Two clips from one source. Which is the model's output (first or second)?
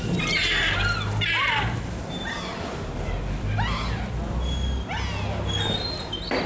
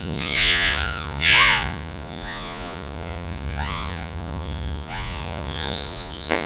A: second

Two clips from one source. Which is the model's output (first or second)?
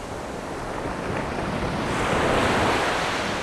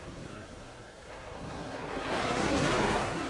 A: second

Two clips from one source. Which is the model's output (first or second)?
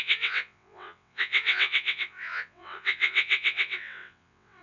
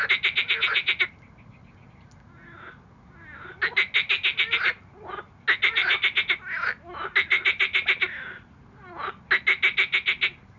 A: first